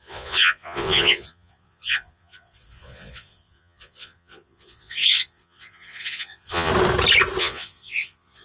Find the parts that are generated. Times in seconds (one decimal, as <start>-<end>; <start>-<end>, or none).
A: 0.0-6.7; 7.4-8.4

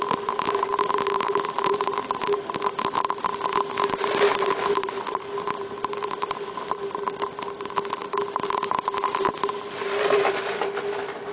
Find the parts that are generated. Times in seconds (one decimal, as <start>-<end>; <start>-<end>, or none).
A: 0.0-11.3

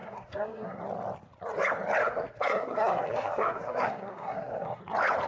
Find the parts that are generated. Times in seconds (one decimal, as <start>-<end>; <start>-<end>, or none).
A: 0.0-0.8; 2.0-4.8

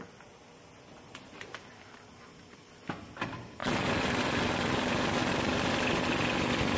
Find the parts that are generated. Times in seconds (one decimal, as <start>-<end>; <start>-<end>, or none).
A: none

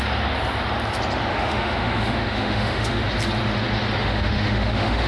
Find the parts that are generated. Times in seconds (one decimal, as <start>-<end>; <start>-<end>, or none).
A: 1.3-3.0; 4.0-5.1

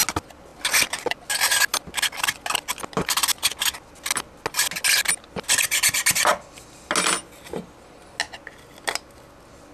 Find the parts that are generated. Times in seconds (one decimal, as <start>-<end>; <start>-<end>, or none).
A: none

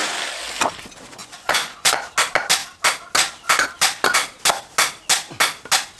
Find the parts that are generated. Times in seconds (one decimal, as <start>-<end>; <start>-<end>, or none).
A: 1.2-2.0

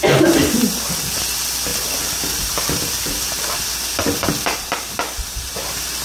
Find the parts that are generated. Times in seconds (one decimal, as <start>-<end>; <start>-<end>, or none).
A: none